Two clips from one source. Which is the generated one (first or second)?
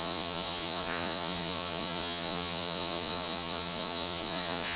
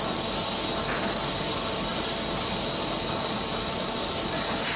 first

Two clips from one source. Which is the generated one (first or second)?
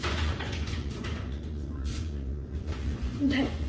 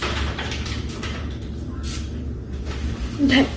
first